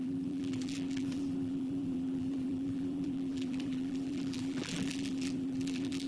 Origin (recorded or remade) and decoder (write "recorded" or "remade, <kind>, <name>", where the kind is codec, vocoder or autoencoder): remade, vocoder, BigVGAN v2